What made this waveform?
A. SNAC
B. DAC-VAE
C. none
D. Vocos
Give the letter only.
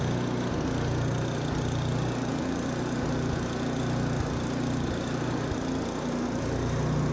C